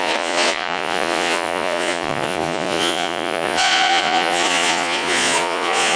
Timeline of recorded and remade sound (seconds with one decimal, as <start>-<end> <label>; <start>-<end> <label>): 0.0-6.0 remade